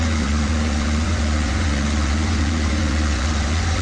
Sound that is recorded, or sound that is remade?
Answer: remade